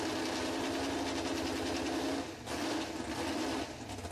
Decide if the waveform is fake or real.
real